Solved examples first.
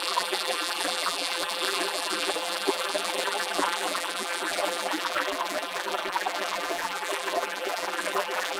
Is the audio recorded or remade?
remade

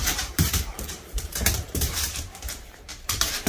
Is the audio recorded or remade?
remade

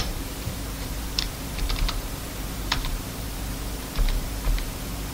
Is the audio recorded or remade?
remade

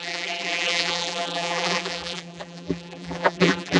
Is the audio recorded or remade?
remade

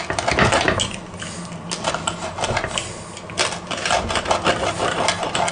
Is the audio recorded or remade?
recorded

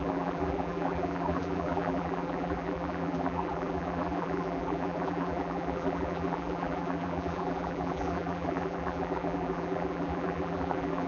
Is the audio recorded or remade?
remade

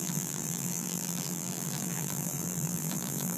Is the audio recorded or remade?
remade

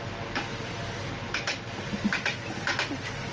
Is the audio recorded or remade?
recorded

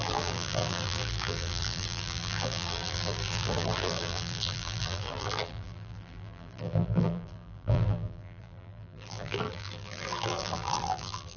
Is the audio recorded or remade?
remade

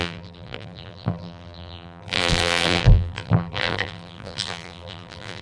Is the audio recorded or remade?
remade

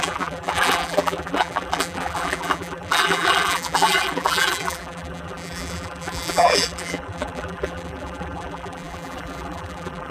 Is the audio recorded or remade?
remade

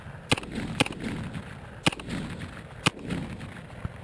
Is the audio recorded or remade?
recorded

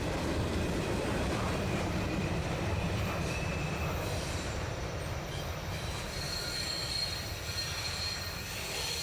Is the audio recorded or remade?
remade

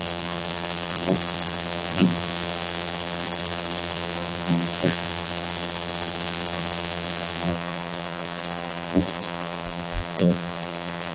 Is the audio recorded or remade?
remade